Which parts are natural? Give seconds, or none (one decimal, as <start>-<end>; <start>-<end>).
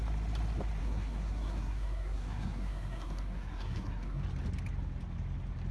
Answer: 0.0-0.8; 4.2-5.7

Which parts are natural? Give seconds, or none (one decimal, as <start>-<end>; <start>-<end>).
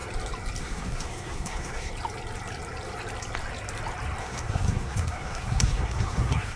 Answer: 0.0-0.6; 1.9-4.2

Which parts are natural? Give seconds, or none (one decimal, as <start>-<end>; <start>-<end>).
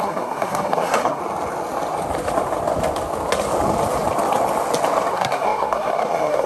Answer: 1.2-5.1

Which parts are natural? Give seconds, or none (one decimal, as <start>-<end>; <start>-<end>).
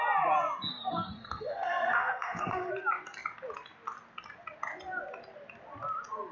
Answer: 0.0-0.7; 2.7-6.3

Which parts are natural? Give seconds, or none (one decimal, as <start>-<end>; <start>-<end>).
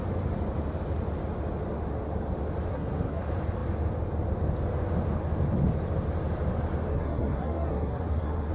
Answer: 0.0-2.7; 3.2-6.9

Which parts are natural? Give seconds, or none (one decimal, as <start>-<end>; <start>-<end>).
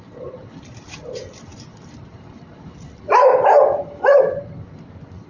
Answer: 0.0-5.3